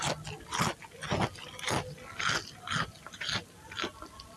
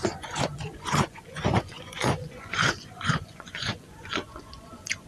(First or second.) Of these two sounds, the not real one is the second